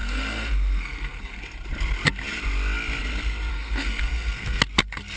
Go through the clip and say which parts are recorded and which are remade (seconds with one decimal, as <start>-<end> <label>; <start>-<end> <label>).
0.0-1.4 remade; 1.4-3.5 recorded; 3.5-4.6 remade; 4.6-5.2 recorded